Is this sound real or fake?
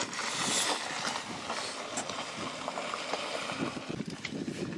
real